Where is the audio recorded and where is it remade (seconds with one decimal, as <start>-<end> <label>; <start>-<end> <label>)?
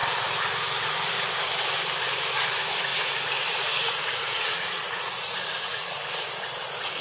0.0-2.9 recorded; 2.9-5.9 remade; 5.9-7.0 recorded